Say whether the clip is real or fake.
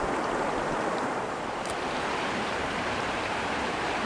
fake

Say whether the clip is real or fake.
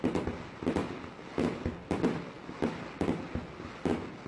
real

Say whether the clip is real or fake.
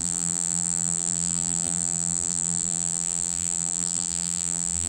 fake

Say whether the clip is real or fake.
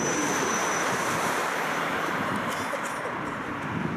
fake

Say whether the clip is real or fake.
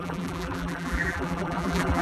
fake